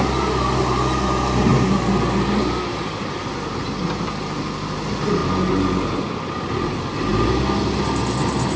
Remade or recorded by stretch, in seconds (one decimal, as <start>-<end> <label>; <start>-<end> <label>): 0.0-8.6 recorded